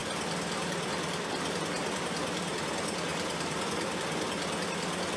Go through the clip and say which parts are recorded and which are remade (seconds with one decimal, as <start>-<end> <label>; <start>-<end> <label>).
0.0-2.6 remade; 2.6-3.1 recorded; 3.1-4.0 remade; 4.0-5.2 recorded